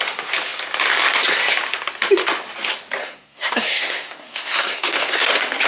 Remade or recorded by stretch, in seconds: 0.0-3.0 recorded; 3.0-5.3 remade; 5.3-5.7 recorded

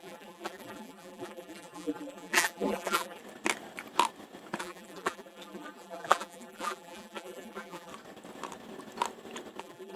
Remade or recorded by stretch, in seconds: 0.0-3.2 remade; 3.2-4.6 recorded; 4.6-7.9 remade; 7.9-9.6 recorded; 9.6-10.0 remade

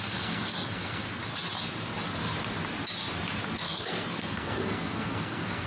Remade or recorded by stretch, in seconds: 0.0-1.2 remade; 1.2-3.6 recorded; 3.6-5.7 remade

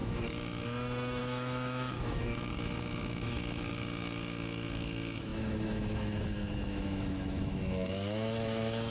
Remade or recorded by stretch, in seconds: 0.0-8.9 remade

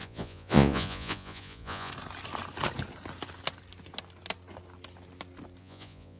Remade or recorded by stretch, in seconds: 0.0-1.9 remade; 1.9-5.6 recorded; 5.6-6.2 remade